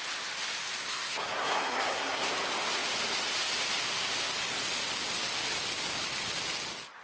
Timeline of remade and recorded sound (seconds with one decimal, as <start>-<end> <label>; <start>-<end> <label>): 0.0-0.8 recorded; 0.8-2.3 remade; 2.3-7.0 recorded